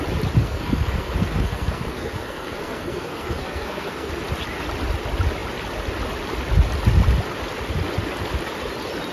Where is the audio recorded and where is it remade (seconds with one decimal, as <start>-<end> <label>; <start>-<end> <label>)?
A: 0.0-0.4 recorded; 0.4-4.1 remade; 4.1-9.1 recorded